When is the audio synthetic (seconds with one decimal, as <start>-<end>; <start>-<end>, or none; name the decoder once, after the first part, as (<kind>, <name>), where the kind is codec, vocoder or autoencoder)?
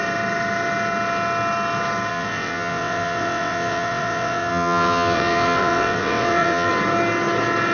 2.1-6.7 (vocoder, WaveNeXt)